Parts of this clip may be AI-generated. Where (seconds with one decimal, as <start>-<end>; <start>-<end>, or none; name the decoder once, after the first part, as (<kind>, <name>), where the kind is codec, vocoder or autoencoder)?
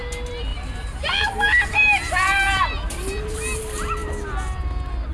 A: 0.5-3.6 (vocoder, BigVGAN v2)